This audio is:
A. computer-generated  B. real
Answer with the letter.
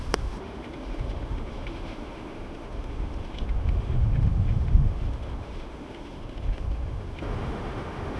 A